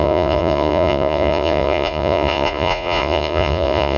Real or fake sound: fake